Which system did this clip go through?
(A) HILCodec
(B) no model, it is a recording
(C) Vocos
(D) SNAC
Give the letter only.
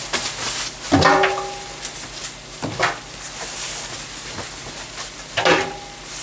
B